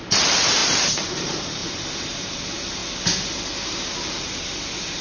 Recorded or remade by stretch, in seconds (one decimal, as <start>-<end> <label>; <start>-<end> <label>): 0.0-1.6 remade; 1.6-2.4 recorded; 2.4-2.8 remade; 2.8-5.0 recorded